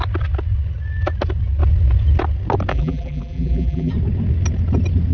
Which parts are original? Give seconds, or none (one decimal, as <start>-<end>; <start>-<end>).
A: 0.0-2.7; 3.9-5.1